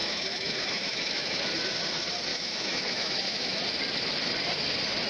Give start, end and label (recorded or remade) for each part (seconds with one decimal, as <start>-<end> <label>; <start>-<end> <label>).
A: 0.0-1.4 remade; 1.4-2.3 recorded; 2.3-3.6 remade; 3.6-5.1 recorded